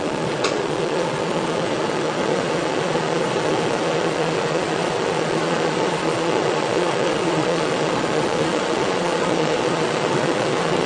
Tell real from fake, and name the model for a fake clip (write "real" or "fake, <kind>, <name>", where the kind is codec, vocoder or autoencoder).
fake, vocoder, Vocos